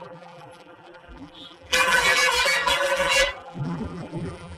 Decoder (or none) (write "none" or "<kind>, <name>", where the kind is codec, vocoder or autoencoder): vocoder, BigVGAN v2